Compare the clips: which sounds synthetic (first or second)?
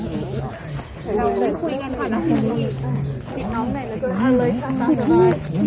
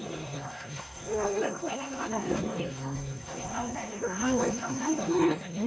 second